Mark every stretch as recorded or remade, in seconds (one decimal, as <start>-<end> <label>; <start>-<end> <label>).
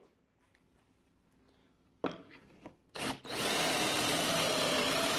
0.0-1.6 recorded; 1.6-3.2 remade; 3.2-5.2 recorded